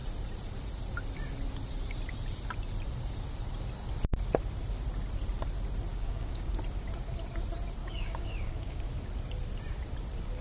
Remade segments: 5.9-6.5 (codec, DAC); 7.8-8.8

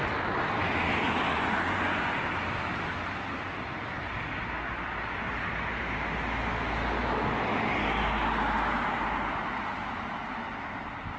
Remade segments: 1.3-2.2 (vocoder, Vocos)

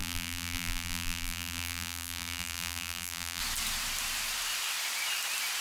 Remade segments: 0.0-3.4 (vocoder, BigVGAN v2)

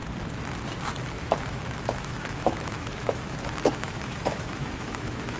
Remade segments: 1.1-5.4 (autoencoder, DAC-VAE)